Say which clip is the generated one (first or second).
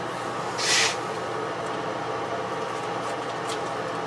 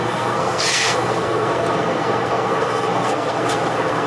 second